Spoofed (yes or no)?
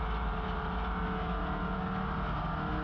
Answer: no